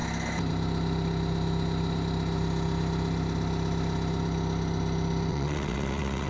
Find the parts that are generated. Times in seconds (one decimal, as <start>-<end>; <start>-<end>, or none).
5.3-6.3